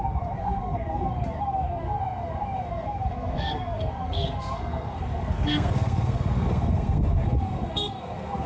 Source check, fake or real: fake